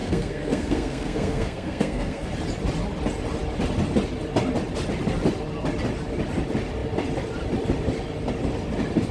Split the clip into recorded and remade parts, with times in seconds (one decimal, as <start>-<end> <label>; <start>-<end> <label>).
0.0-2.3 remade; 2.3-9.1 recorded